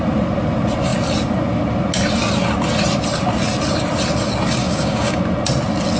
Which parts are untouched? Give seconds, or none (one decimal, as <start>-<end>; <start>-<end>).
0.0-4.6; 5.2-6.0